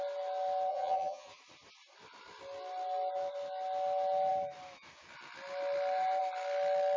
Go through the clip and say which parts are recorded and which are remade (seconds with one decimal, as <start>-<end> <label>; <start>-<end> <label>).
0.0-0.7 recorded; 0.7-1.4 remade; 1.4-7.0 recorded